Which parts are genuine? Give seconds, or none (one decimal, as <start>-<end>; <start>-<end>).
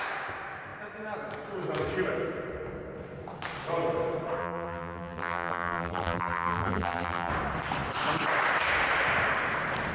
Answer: 0.0-4.4; 7.3-9.9